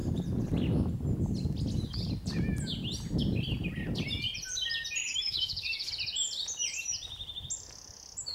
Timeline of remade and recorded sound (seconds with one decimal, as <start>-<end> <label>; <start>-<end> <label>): 0.0-5.0 recorded; 5.0-5.9 remade; 5.9-8.3 recorded